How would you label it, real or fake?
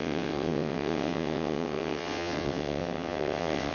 fake